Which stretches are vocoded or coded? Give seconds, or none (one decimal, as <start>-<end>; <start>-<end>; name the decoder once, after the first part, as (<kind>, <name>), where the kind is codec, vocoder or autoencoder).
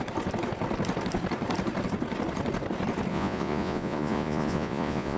3.1-5.2 (vocoder, Vocos)